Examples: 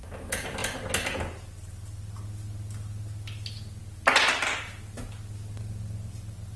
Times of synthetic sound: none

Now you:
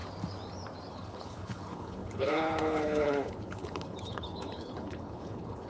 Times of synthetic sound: 0.9-5.7 (codec, HILCodec)